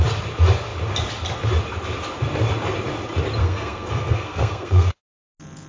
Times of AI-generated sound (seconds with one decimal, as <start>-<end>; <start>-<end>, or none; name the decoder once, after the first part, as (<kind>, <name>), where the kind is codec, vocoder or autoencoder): 3.4-5.0 (codec, SNAC)